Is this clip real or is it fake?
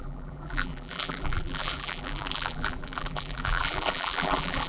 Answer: fake